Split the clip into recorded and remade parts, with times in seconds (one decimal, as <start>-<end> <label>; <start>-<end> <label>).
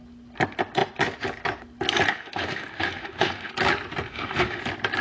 0.0-2.1 recorded; 2.1-3.5 remade; 3.5-4.1 recorded; 4.1-4.6 remade; 4.6-5.0 recorded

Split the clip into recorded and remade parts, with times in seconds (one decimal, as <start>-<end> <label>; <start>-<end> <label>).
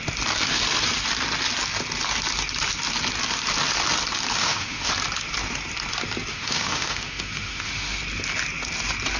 0.0-4.4 recorded; 4.4-4.9 remade; 4.9-6.3 recorded; 6.3-8.0 remade; 8.0-9.2 recorded